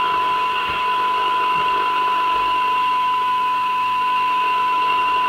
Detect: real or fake fake